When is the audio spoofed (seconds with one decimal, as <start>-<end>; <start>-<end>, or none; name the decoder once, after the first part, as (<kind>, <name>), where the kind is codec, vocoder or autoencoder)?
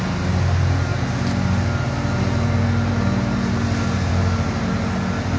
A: none